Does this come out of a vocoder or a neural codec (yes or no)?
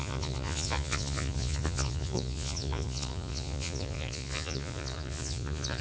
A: yes